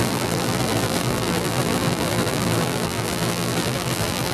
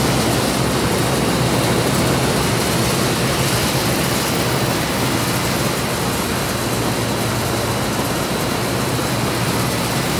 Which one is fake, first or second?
first